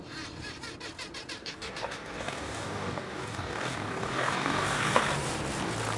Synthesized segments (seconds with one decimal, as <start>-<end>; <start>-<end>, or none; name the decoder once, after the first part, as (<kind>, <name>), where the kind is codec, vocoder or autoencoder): 1.4-5.0 (codec, DAC)